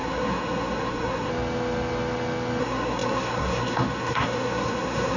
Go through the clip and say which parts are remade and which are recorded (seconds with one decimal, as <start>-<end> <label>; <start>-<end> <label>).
0.0-1.3 remade; 1.3-2.6 recorded; 2.6-5.2 remade